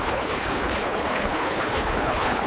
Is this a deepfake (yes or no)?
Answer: yes